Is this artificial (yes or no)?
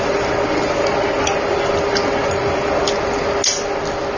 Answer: no